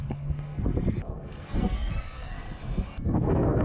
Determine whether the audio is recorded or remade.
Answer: remade